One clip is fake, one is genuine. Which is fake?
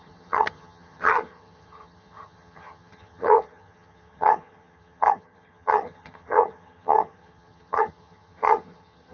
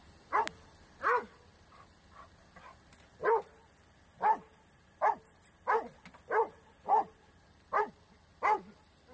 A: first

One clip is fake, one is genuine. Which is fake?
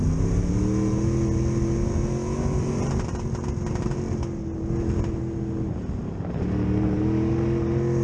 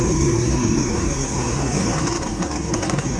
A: second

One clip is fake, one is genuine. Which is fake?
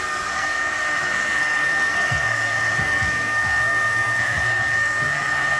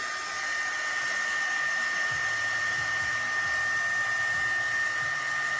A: first